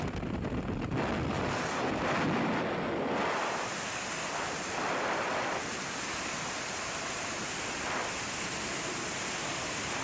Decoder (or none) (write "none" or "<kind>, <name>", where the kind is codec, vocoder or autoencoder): none